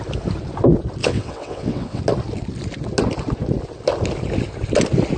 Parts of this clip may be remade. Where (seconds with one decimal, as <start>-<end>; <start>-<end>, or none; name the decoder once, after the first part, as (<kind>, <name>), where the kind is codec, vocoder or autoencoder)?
1.0-2.0 (vocoder, WaveNeXt)